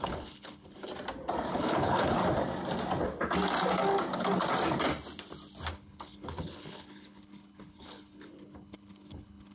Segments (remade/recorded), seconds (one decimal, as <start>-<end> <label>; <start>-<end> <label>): 0.0-0.9 remade; 0.9-1.5 recorded; 1.5-2.2 remade; 2.2-5.7 recorded; 5.7-9.5 remade